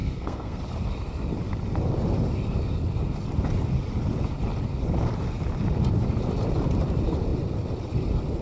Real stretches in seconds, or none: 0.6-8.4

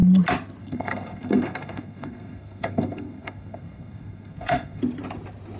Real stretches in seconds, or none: 0.0-0.6; 4.8-5.6

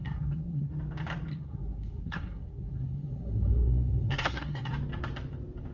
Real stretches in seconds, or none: 0.7-1.3; 4.7-5.7

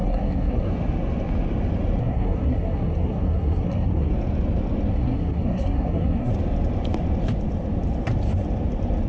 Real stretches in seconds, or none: 0.7-2.0; 4.1-4.9; 6.3-9.1

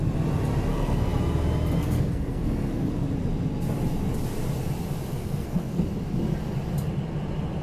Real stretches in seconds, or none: 0.0-0.7; 1.2-1.8; 2.9-5.1; 5.8-7.6

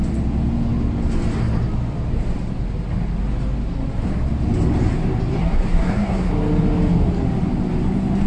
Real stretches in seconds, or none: 0.0-5.4; 6.3-8.3

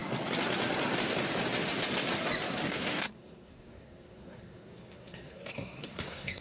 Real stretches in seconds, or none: 0.0-2.7